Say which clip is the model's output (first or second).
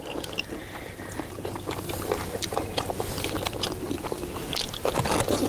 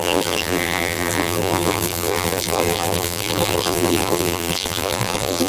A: second